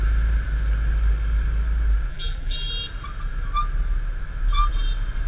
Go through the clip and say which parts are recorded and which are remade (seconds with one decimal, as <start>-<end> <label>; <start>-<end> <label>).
0.0-2.1 recorded; 2.1-2.7 remade; 2.7-5.3 recorded